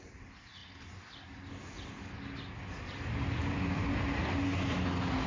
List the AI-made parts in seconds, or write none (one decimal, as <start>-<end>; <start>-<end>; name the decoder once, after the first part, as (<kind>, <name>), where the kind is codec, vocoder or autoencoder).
none